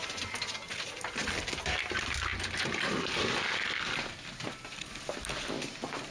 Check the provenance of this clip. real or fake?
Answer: real